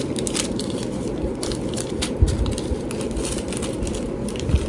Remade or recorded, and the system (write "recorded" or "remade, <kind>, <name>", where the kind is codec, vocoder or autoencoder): remade, vocoder, BigVGAN v2